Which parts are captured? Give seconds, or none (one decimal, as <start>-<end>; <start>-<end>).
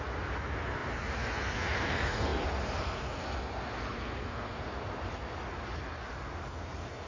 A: 0.0-7.1